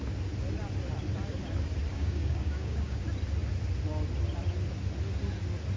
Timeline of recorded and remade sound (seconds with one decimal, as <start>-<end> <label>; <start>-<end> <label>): 0.0-1.9 recorded; 1.9-3.0 remade; 3.0-5.8 recorded